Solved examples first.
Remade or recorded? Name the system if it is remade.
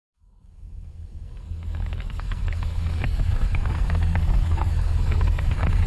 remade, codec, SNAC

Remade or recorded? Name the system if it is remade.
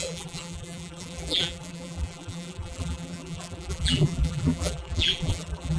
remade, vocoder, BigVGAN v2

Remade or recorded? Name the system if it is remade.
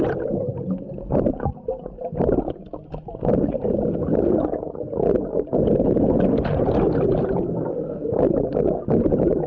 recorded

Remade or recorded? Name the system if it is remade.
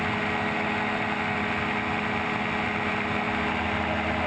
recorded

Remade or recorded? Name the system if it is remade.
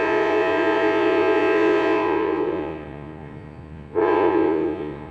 remade, vocoder, Vocos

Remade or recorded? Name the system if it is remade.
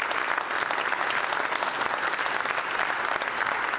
recorded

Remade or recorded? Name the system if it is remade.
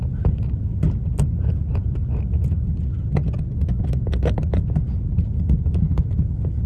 recorded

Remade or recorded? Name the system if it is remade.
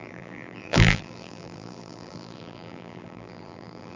remade, vocoder, BigVGAN v2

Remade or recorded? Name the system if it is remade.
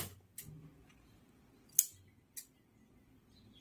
recorded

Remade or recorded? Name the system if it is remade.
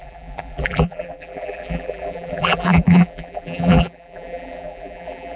remade, vocoder, BigVGAN v2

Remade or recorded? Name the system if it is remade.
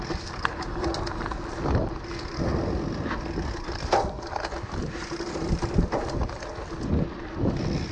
recorded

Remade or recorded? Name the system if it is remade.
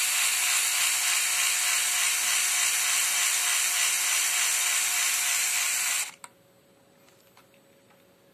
recorded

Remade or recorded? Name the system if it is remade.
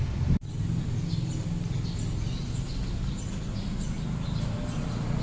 recorded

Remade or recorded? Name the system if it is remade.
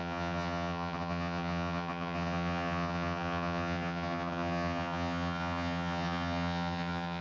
remade, vocoder, HiFi-GAN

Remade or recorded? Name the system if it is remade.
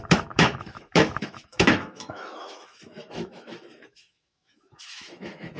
remade, autoencoder, DAC-VAE